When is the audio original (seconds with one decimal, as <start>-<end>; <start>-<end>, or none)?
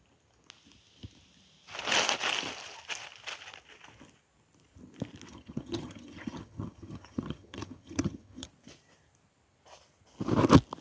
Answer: 0.0-5.3; 8.5-10.8